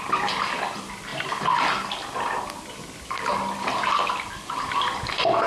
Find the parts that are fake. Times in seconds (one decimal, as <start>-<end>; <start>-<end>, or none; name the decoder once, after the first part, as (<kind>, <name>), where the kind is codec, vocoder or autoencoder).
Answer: none